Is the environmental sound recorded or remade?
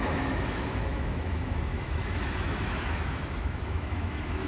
remade